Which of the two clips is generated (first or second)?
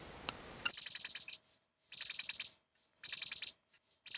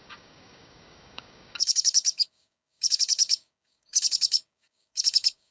second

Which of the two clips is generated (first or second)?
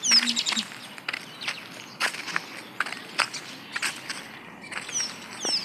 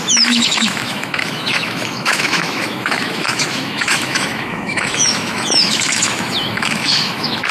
second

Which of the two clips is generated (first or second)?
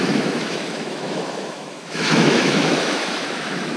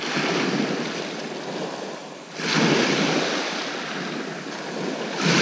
first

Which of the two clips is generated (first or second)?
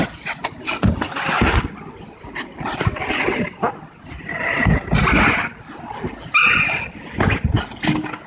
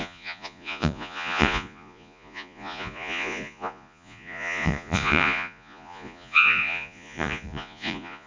second